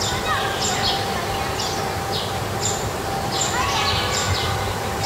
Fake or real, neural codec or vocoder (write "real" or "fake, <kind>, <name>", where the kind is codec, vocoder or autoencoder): fake, vocoder, BigVGAN v2